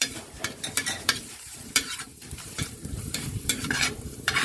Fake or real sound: fake